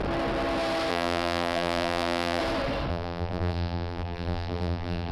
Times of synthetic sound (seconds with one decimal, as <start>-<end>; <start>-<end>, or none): 0.9-2.4; 2.9-5.1